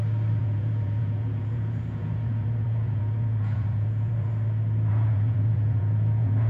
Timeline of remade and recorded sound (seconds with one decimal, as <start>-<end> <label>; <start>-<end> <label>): 0.0-0.4 recorded; 0.4-4.3 remade; 4.3-4.9 recorded; 4.9-6.5 remade